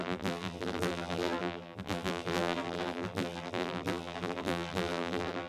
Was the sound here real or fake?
fake